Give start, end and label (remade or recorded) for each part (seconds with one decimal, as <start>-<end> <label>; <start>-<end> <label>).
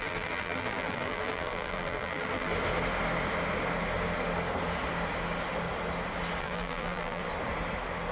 0.0-2.5 remade; 2.5-6.4 recorded; 6.4-7.2 remade; 7.2-8.1 recorded